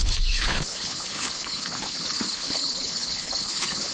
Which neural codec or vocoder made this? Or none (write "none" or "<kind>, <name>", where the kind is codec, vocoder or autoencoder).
codec, HILCodec